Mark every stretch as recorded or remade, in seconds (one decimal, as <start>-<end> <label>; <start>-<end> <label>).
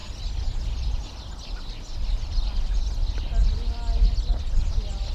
0.0-5.1 recorded